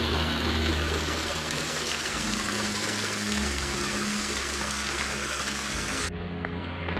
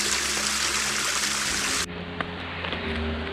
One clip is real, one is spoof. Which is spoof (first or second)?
first